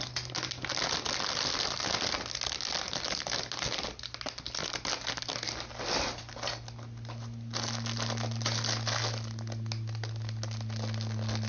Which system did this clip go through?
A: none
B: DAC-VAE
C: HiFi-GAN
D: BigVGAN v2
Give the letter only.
A